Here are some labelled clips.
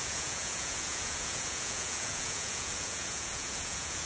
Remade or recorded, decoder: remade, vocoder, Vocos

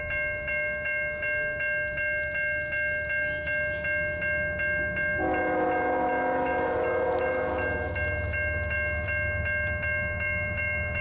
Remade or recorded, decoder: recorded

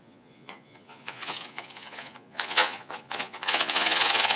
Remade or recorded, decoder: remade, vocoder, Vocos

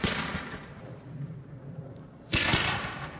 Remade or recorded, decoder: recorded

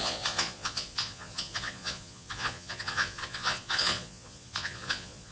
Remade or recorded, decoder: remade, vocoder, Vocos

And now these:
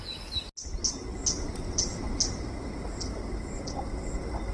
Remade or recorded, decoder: recorded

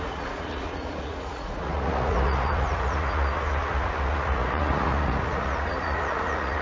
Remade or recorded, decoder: remade, vocoder, Vocos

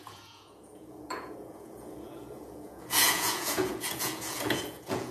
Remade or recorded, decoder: remade, vocoder, Vocos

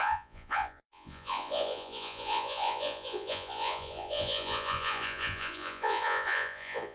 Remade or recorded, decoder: remade, vocoder, Vocos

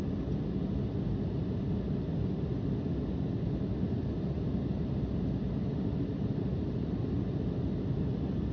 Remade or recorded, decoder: recorded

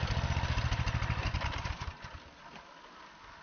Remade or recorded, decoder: recorded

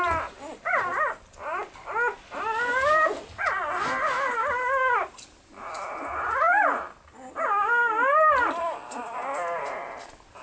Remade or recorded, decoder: recorded